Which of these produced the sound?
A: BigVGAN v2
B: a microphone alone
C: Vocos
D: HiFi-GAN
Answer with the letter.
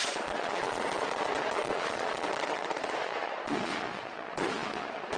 C